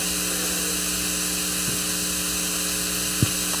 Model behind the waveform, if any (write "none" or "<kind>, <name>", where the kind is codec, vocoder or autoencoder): none